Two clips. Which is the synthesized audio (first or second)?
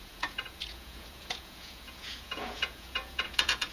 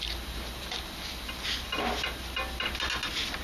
first